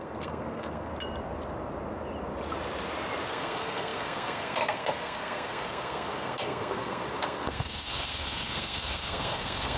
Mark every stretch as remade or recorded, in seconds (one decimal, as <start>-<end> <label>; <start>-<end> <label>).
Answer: 0.0-0.9 remade; 0.9-3.3 recorded; 3.3-9.8 remade